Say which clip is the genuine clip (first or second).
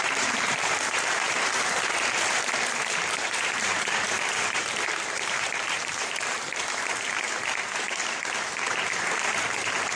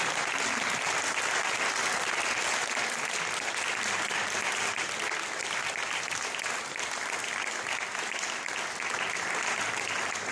second